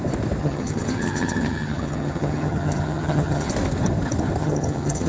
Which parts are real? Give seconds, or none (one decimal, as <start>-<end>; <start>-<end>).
0.0-0.4; 3.5-4.4